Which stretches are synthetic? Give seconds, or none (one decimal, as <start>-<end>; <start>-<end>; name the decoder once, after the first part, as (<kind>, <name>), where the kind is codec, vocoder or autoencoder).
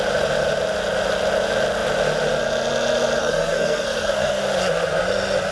3.2-4.4 (codec, SNAC)